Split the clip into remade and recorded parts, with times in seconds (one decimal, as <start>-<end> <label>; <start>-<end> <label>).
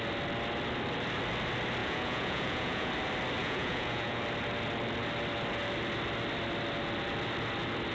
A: 0.0-1.8 recorded; 1.8-2.9 remade; 2.9-3.4 recorded; 3.4-4.2 remade; 4.2-7.9 recorded